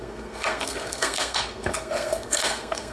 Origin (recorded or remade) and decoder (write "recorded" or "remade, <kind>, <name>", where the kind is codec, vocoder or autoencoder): remade, codec, SNAC